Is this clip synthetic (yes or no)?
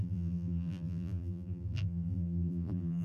yes